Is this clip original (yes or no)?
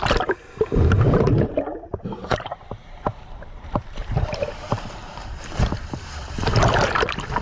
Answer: no